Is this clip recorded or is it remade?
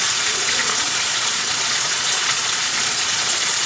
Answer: remade